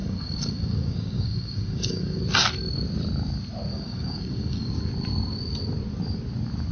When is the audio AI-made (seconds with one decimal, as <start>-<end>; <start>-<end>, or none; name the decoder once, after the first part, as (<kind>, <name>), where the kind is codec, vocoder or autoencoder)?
0.0-2.2 (codec, DAC); 3.7-4.7

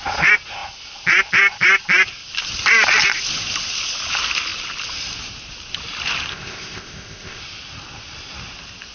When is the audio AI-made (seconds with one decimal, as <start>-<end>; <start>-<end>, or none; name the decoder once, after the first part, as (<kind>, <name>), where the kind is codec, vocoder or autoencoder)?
6.3-7.4 (codec, ZipCodec)

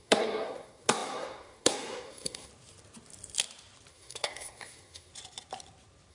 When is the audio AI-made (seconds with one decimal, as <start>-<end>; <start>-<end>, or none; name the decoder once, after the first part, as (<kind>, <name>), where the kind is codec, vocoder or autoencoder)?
0.0-2.5 (codec, SNAC); 3.9-5.1

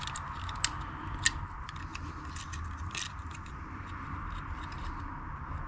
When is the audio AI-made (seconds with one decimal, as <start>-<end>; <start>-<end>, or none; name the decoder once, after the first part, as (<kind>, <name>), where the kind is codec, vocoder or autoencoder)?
none

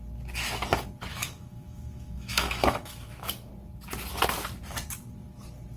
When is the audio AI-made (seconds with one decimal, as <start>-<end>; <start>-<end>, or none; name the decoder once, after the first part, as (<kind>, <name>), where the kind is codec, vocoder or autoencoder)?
1.1-3.5 (autoencoder, DAC-VAE)

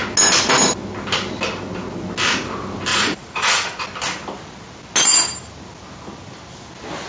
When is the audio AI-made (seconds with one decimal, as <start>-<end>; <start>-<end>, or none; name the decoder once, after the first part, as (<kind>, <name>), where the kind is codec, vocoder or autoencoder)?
2.9-3.8 (vocoder, Vocos)

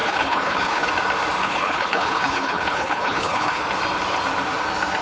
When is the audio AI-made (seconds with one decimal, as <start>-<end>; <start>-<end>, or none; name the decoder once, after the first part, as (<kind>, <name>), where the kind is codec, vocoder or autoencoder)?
0.0-0.9 (codec, HILCodec); 1.4-3.6